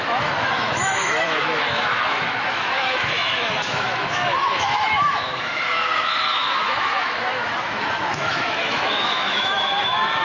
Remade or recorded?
remade